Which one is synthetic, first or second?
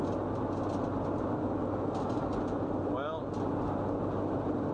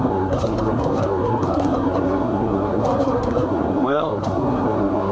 second